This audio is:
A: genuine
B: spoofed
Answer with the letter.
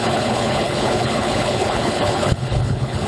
B